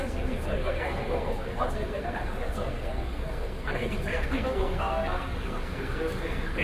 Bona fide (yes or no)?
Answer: no